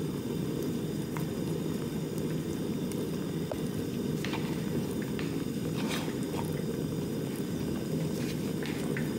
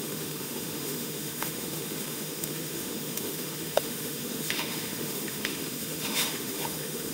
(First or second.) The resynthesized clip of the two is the second